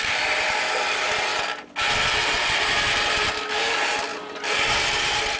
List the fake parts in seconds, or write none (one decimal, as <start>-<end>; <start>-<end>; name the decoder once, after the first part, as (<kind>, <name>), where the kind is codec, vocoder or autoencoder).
none